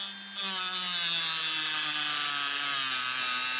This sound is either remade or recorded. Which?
recorded